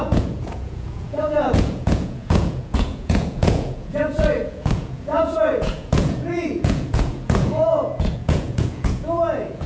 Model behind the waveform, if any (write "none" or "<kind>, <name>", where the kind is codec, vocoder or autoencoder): vocoder, Vocos